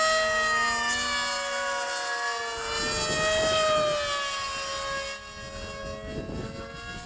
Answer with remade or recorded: recorded